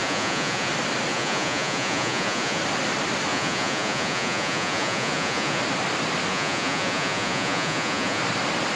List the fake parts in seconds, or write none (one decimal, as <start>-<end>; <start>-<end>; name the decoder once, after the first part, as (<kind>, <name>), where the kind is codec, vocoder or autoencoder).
0.0-0.7 (vocoder, Vocos); 1.1-2.6; 3.3-5.6; 6.3-8.2